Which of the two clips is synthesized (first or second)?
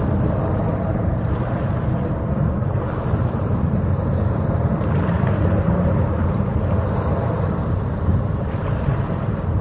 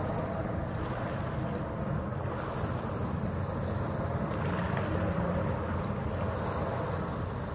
first